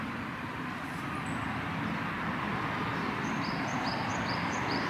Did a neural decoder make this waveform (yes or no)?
yes